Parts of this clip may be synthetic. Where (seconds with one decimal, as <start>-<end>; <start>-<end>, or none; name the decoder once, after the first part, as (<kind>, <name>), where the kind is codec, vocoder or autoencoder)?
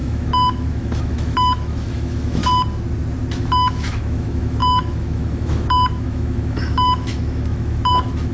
0.0-2.4 (autoencoder, DAC-VAE); 3.4-8.3